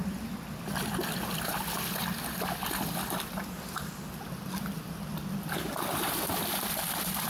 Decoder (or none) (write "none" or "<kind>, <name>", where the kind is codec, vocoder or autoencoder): none